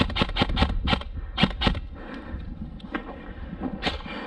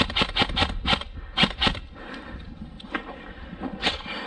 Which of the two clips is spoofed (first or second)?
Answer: second